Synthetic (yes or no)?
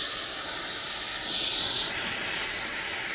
no